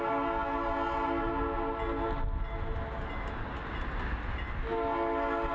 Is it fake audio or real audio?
real